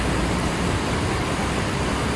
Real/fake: real